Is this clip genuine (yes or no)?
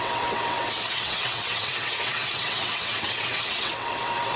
no